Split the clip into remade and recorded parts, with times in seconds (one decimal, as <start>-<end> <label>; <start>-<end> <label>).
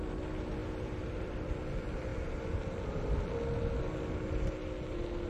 0.0-0.6 recorded; 0.6-1.3 remade; 1.3-5.3 recorded